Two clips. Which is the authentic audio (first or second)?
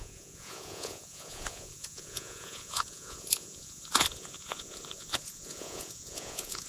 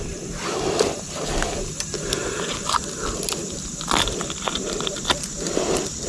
second